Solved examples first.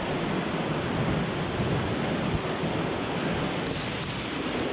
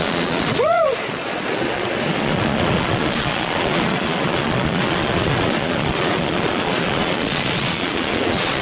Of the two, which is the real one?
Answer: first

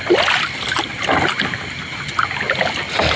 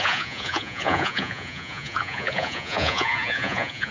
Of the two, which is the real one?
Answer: first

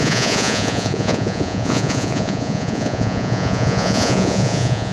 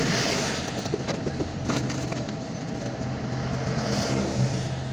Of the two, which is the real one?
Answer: second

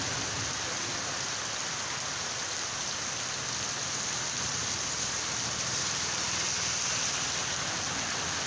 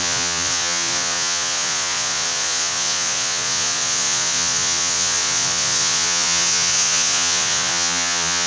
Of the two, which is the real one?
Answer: first